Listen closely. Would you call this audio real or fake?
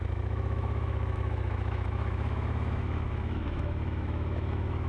fake